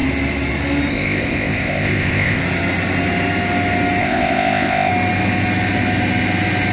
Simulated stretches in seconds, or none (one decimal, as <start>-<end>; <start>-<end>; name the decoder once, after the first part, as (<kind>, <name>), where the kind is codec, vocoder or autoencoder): 0.9-2.4 (codec, ZipCodec); 4.0-4.9